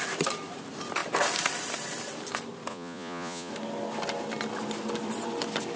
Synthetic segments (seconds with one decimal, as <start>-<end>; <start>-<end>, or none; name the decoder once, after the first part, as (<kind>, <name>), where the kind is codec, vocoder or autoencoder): 2.7-3.5 (vocoder, Vocos)